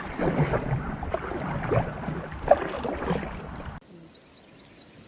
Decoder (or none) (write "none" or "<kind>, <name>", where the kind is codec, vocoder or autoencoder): vocoder, BigVGAN v2